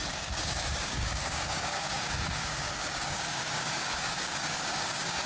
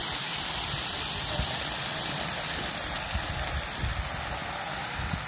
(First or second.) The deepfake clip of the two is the first